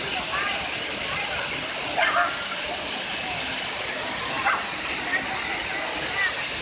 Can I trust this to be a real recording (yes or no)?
yes